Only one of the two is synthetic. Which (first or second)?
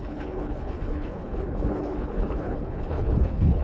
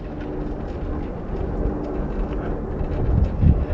first